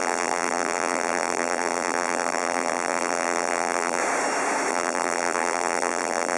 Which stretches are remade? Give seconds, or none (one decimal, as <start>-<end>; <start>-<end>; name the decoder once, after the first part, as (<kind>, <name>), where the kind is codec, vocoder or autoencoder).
0.0-4.0 (vocoder, BigVGAN v2); 4.7-6.4